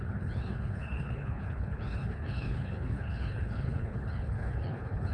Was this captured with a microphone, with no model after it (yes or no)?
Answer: no